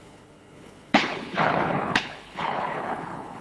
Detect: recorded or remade remade